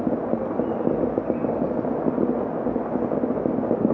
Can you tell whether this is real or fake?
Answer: real